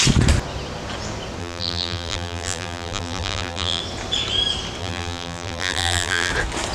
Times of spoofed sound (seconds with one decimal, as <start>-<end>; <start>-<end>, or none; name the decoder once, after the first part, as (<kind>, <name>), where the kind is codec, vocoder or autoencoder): 1.4-3.8 (vocoder, BigVGAN v2); 4.8-6.3